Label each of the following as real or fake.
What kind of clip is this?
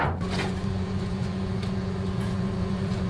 fake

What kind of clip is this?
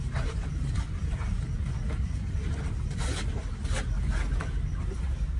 real